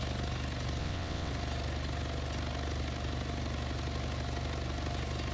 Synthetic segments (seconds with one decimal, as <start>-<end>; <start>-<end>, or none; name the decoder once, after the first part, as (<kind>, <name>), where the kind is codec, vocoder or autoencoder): 0.8-1.3 (vocoder, WaveNeXt)